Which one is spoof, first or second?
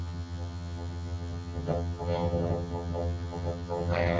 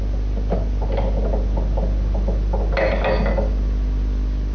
first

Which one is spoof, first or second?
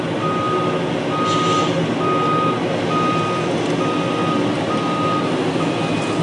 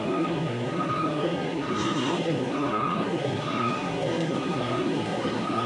second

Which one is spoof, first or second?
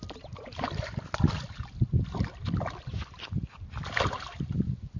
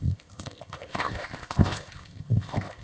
second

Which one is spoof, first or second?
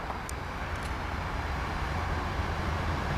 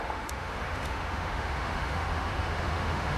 second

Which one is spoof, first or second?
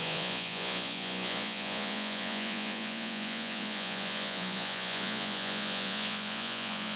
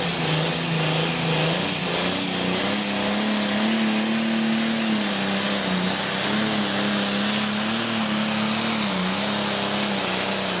first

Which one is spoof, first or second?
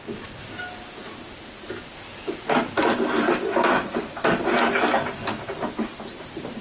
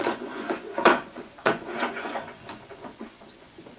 second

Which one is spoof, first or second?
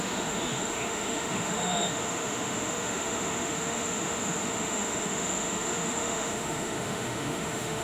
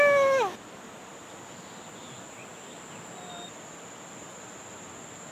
first